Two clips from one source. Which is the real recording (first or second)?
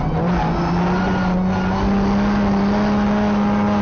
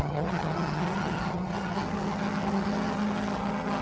first